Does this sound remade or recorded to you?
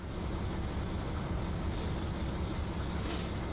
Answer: recorded